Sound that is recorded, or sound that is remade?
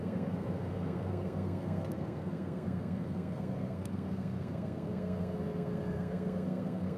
remade